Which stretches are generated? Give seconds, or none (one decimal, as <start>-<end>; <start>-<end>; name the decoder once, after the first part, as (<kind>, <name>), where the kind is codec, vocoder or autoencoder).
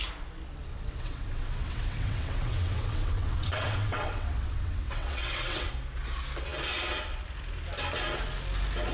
0.7-5.7 (vocoder, WaveNeXt)